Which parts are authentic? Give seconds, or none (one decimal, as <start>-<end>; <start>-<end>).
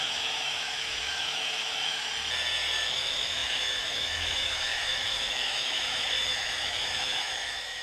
2.1-2.9